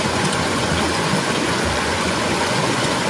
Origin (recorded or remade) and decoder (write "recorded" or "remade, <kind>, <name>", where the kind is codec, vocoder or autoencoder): remade, vocoder, Vocos